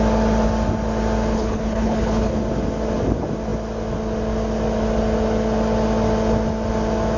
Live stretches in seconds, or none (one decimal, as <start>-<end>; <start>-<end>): 0.0-1.3; 2.4-7.2